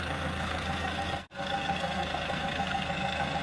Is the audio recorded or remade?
remade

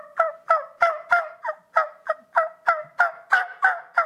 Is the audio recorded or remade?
recorded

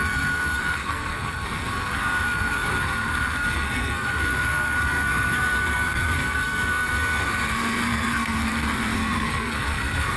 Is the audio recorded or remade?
remade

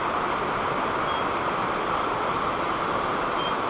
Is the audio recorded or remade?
recorded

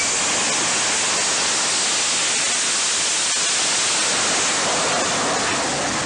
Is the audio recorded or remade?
recorded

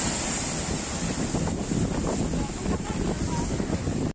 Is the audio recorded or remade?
recorded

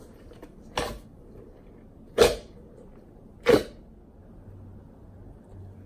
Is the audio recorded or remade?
recorded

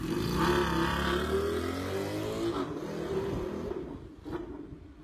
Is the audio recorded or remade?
recorded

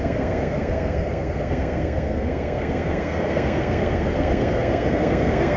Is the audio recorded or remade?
remade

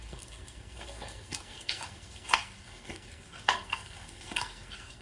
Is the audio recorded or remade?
remade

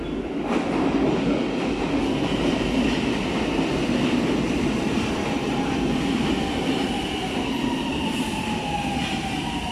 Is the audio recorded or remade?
recorded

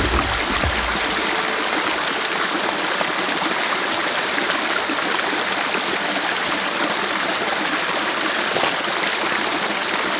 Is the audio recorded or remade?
recorded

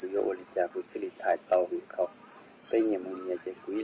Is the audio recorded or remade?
recorded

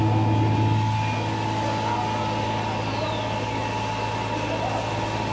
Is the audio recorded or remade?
recorded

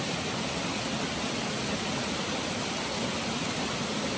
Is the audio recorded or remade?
recorded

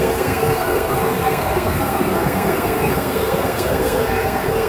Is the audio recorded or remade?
remade